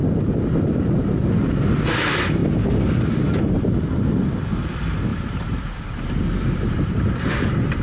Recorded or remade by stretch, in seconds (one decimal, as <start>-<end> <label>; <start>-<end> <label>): 0.0-2.4 recorded; 2.4-3.6 remade; 3.6-5.1 recorded; 5.1-7.8 remade